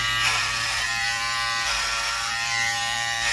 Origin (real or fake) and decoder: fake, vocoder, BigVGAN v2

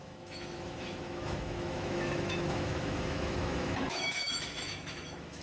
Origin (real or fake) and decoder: fake, autoencoder, DAC-VAE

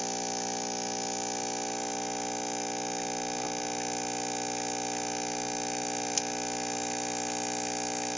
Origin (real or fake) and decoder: real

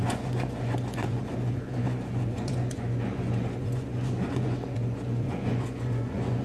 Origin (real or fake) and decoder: fake, vocoder, Vocos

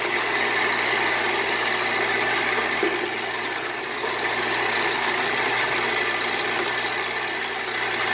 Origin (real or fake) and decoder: real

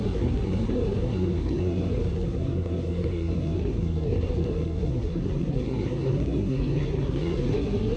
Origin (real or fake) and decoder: fake, codec, SNAC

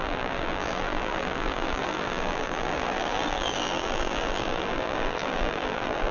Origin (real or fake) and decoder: fake, vocoder, BigVGAN v2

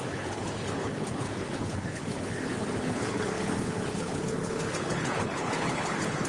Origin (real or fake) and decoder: fake, codec, HILCodec